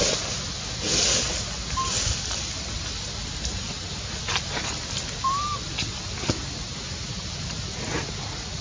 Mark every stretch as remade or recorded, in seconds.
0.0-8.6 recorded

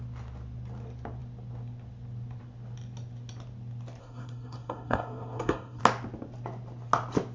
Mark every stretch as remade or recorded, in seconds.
0.0-4.0 recorded; 4.0-5.8 remade; 5.8-7.3 recorded